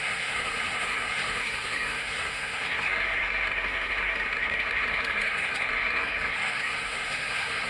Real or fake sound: fake